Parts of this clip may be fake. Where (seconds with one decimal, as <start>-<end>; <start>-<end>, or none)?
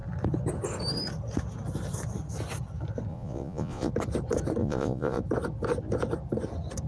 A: 3.1-3.9; 4.6-5.2